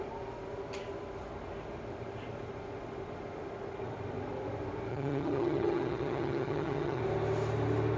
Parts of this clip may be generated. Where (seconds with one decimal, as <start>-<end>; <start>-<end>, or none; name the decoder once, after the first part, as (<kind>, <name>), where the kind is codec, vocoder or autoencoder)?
4.9-7.0 (vocoder, HiFi-GAN)